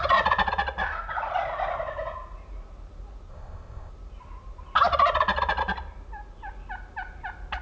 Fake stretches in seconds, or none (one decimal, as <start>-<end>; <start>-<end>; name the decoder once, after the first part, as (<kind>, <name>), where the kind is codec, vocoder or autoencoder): 3.3-3.9 (codec, ZipCodec)